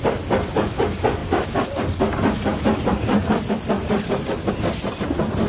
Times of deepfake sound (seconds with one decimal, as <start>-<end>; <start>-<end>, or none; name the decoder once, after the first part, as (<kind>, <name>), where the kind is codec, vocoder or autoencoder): none